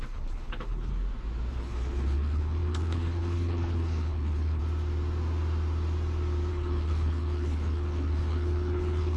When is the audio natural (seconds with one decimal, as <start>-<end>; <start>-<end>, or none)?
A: 0.9-1.5; 4.6-6.5